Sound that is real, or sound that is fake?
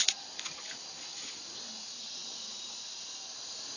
real